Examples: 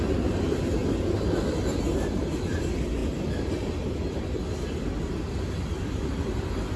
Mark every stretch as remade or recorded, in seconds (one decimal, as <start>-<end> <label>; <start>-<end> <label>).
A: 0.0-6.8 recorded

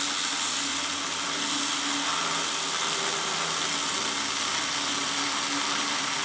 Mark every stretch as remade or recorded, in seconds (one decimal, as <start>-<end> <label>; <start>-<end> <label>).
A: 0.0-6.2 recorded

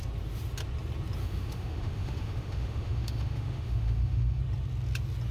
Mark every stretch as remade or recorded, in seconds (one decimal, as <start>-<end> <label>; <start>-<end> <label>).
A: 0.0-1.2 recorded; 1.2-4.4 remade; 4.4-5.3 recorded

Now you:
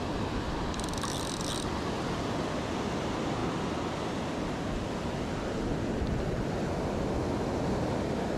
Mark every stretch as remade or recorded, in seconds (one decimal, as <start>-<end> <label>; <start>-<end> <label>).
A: 0.0-8.4 recorded

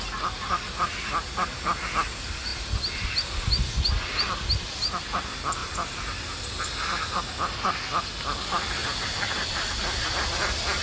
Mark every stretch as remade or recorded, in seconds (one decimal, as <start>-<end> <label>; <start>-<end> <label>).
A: 0.0-10.8 recorded